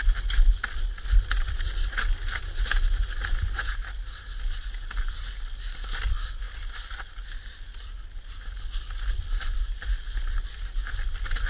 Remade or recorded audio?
recorded